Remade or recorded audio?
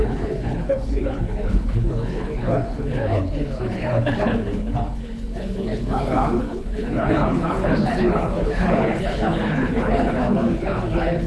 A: remade